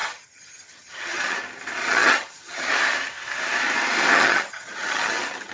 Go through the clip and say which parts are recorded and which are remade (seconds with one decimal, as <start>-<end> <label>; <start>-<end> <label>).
0.0-1.4 remade; 1.4-1.8 recorded; 1.8-2.7 remade; 2.7-4.1 recorded; 4.1-5.5 remade